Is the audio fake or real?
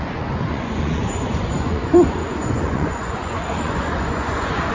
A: fake